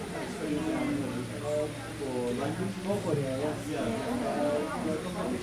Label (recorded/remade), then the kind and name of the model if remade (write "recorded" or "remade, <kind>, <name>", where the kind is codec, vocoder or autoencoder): recorded